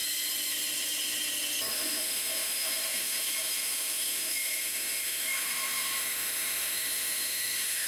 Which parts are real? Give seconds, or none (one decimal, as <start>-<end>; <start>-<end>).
0.0-1.7